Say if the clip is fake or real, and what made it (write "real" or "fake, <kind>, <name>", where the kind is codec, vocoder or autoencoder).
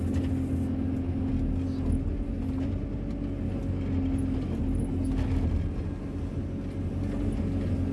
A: real